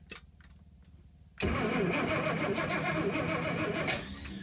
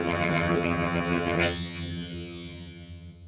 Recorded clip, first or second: first